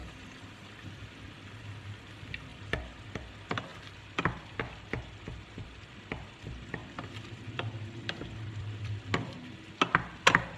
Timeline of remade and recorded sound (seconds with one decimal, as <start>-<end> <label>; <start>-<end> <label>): 0.0-0.9 remade; 0.9-2.5 recorded; 2.5-3.0 remade; 3.0-6.8 recorded; 6.8-8.9 remade; 8.9-10.6 recorded